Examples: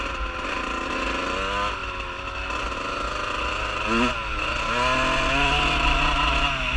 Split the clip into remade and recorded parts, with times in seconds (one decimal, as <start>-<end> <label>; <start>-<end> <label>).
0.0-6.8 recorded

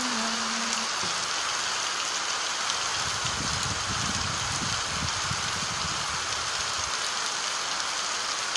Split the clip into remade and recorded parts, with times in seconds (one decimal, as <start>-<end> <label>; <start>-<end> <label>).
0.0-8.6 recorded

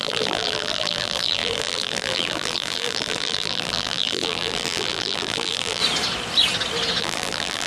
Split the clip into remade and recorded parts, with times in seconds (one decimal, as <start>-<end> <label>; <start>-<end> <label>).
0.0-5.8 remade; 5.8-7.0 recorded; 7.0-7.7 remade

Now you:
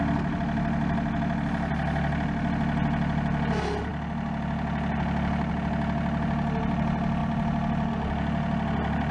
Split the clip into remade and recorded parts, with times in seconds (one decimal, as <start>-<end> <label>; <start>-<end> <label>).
0.0-7.2 recorded; 7.2-7.9 remade; 7.9-9.1 recorded

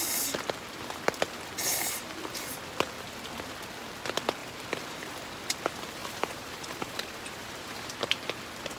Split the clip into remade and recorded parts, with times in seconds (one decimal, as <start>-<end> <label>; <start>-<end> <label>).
0.0-4.4 recorded; 4.4-5.3 remade; 5.3-6.0 recorded; 6.0-8.3 remade; 8.3-8.8 recorded